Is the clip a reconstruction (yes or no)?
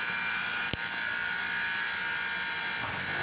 no